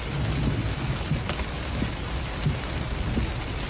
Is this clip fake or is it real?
real